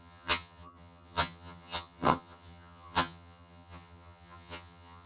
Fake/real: fake